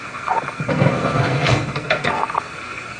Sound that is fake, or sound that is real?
fake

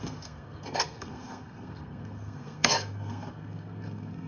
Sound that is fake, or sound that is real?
fake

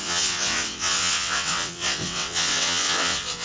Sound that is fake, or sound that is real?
fake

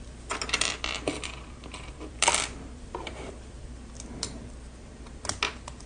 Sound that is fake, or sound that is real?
fake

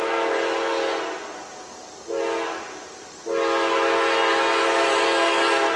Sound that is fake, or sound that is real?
real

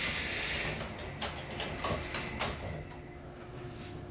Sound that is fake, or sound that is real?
real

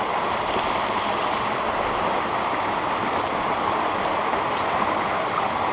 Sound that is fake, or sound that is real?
real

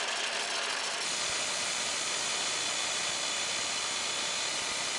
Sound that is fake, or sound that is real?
real